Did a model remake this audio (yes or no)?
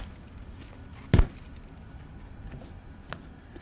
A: no